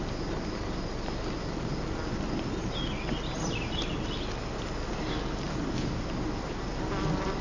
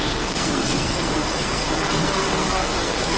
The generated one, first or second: second